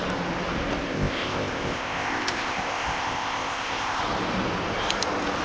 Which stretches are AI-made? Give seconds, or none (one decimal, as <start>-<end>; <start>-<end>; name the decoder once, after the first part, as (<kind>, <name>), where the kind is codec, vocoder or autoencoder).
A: 0.9-4.0 (codec, ZipCodec)